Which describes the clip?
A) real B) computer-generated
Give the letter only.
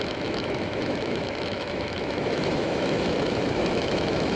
B